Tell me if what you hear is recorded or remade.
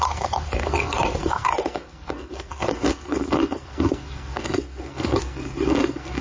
remade